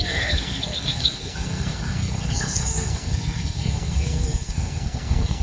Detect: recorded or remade remade